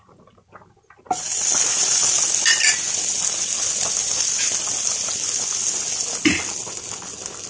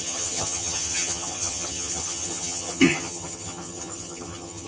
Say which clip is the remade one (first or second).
second